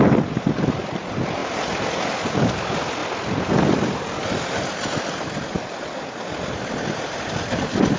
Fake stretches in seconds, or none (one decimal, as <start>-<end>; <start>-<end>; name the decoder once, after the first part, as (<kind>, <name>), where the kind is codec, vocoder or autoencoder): 3.0-3.5 (vocoder, BigVGAN v2)